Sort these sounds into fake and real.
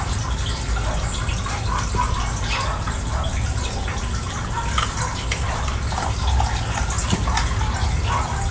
real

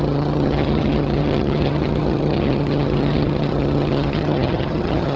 fake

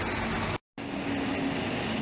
real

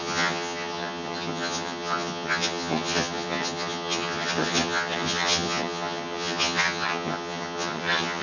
fake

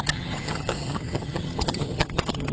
fake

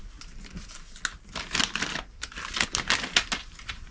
real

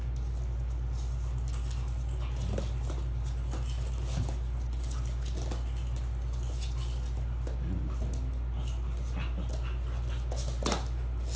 real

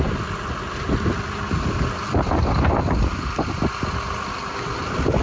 real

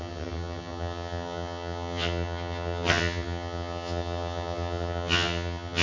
fake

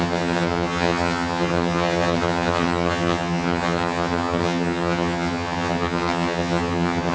fake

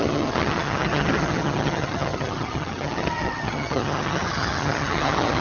fake